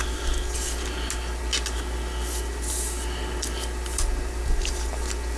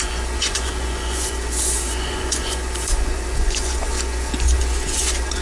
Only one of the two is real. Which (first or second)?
first